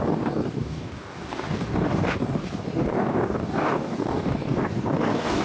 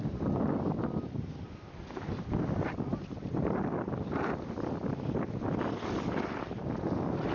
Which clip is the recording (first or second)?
second